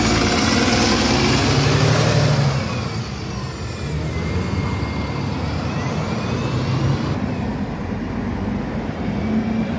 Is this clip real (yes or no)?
yes